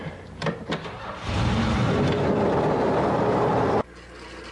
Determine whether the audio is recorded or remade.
recorded